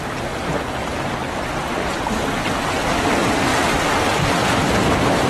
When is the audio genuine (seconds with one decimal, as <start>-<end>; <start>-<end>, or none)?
0.0-0.8; 2.1-5.3